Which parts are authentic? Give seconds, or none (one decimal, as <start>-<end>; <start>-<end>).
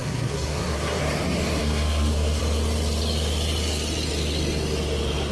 1.0-1.6; 2.4-5.3